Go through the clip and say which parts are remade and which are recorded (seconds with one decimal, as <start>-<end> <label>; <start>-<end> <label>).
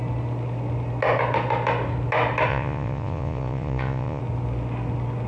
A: 0.0-2.5 recorded; 2.5-4.2 remade; 4.2-5.3 recorded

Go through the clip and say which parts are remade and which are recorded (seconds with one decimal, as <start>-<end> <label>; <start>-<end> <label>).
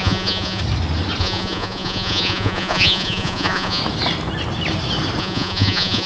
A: 0.0-0.6 remade; 0.6-1.2 recorded; 1.2-3.8 remade; 3.8-5.2 recorded; 5.2-6.1 remade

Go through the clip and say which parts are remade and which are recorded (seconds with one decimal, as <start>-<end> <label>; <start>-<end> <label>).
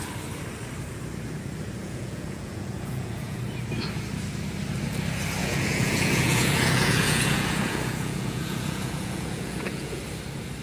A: 0.0-1.8 recorded; 1.8-3.4 remade; 3.4-5.4 recorded; 5.4-10.0 remade; 10.0-10.6 recorded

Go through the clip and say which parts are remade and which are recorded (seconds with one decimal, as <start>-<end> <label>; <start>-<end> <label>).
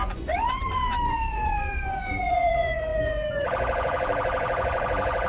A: 0.0-5.3 remade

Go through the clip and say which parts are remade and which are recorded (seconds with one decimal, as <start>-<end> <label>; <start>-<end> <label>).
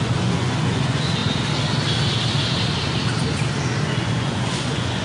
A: 0.0-1.2 remade; 1.2-3.8 recorded; 3.8-5.0 remade